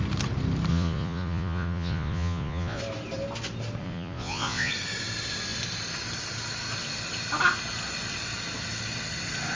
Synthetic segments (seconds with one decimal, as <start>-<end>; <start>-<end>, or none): 0.7-2.8; 3.8-4.7